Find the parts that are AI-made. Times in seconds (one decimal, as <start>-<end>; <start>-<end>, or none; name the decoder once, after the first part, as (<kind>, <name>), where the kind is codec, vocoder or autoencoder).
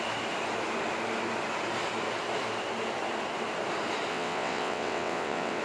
4.1-5.6 (vocoder, WaveNeXt)